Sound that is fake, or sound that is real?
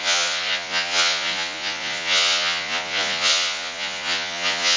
fake